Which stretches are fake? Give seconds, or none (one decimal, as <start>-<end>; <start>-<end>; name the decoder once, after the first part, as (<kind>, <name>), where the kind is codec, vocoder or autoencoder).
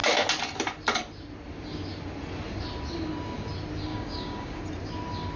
3.9-4.6 (codec, DAC)